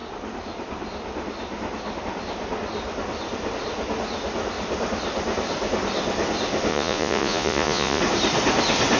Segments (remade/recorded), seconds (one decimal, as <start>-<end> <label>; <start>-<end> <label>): 0.0-6.7 recorded; 6.7-8.0 remade; 8.0-9.0 recorded